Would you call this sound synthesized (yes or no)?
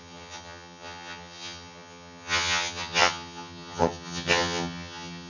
yes